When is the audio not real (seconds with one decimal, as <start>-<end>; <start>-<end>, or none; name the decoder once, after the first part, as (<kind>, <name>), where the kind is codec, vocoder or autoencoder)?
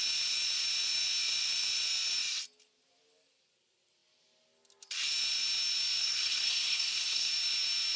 6.0-7.3 (codec, SNAC)